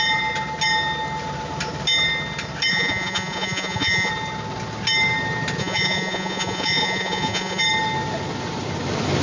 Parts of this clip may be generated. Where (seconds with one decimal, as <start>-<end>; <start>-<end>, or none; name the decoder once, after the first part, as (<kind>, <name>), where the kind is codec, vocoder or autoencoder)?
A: 2.7-4.1 (vocoder, Vocos); 5.6-7.6